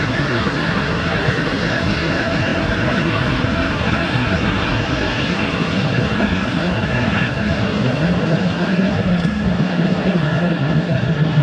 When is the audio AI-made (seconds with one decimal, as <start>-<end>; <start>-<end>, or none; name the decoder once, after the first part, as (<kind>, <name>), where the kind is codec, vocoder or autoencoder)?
0.0-11.4 (codec, SNAC)